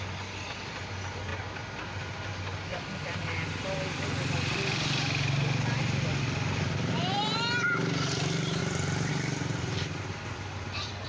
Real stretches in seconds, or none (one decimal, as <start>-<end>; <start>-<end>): 1.3-2.3